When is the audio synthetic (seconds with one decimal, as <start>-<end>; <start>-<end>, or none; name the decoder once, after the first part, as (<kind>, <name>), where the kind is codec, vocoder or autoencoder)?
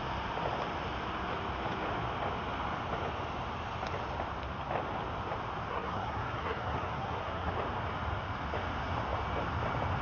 5.7-7.5 (codec, SNAC)